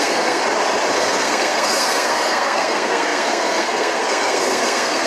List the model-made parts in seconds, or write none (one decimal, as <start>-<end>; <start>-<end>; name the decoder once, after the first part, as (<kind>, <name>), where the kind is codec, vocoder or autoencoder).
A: 0.0-0.4 (codec, SNAC); 0.9-5.1